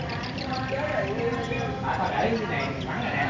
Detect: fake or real real